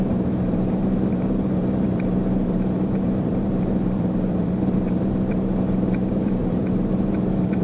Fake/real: fake